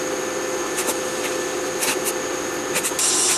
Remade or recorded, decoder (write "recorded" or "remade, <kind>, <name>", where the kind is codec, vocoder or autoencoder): recorded